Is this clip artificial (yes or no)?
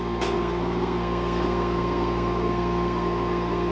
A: yes